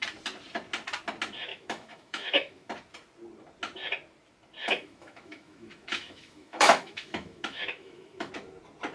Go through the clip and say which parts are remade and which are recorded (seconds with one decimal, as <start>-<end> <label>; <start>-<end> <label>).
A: 0.0-1.5 recorded; 1.5-2.7 remade; 2.7-4.6 recorded; 4.6-8.3 remade; 8.3-8.9 recorded